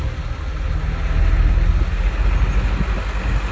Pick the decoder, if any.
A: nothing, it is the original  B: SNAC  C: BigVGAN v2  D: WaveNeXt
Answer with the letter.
A